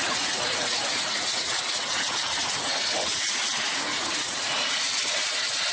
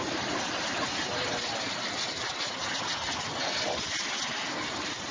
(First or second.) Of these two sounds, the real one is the second